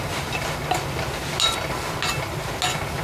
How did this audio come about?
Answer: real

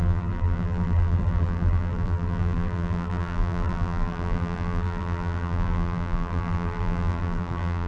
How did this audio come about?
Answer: fake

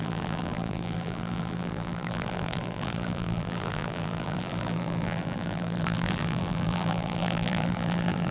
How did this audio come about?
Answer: fake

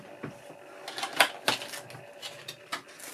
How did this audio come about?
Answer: real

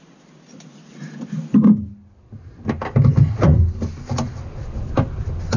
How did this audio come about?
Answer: real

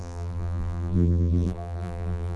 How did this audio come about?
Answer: fake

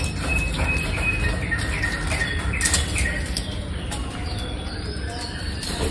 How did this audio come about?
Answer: real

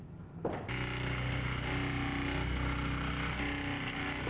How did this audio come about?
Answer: real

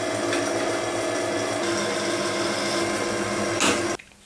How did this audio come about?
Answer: real